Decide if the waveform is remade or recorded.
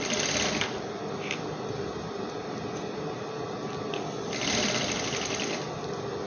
recorded